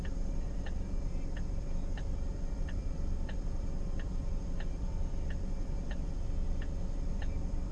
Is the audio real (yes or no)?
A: no